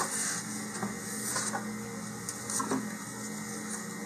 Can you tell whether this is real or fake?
real